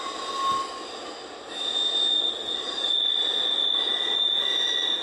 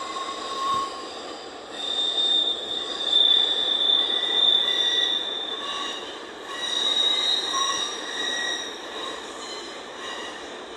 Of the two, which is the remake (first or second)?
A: second